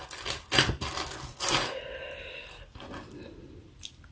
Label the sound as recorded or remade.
recorded